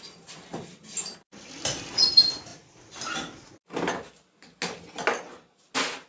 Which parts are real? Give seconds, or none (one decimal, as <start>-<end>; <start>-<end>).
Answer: 0.0-6.1